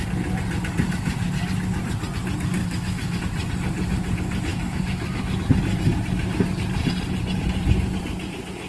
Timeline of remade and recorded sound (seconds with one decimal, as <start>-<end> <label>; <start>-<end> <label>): 0.0-2.6 recorded; 2.6-3.2 remade; 3.2-4.5 recorded; 4.5-5.4 remade; 5.4-8.7 recorded